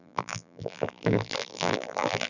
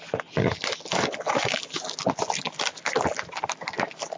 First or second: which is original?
second